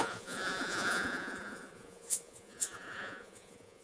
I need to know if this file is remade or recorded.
remade